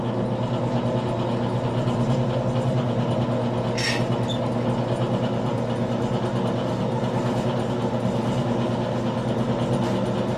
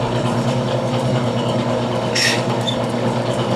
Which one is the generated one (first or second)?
second